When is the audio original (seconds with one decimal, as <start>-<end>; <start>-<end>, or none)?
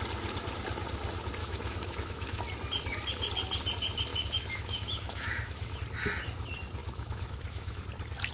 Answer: 0.0-1.4; 2.4-4.1; 5.8-6.8; 7.8-8.3